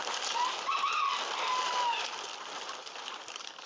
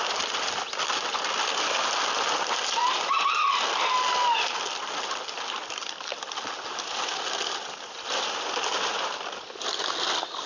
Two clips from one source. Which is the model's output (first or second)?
first